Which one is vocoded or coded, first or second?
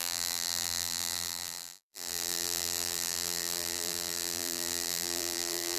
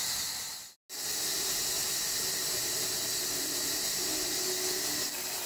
first